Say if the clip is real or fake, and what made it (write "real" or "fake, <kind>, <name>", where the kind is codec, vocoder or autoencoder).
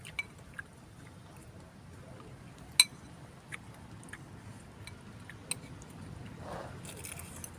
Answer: real